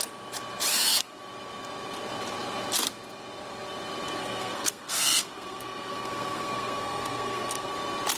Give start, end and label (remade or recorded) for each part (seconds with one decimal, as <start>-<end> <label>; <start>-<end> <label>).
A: 0.0-0.7 recorded; 0.7-1.2 remade; 1.2-4.2 recorded; 4.2-7.7 remade; 7.7-8.2 recorded